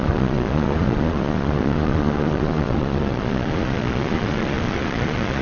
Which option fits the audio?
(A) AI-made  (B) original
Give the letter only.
A